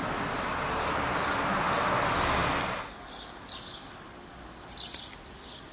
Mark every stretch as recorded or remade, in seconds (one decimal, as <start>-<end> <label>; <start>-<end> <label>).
0.0-5.7 recorded